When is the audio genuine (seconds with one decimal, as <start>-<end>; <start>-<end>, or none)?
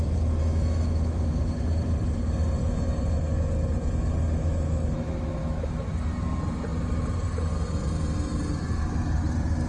0.0-0.4; 1.4-4.4; 5.8-9.7